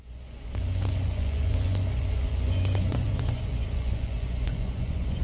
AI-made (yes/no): yes